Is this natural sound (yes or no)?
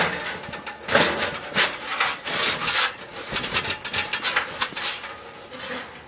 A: yes